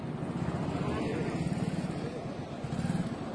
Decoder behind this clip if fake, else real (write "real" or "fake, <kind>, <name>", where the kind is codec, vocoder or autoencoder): real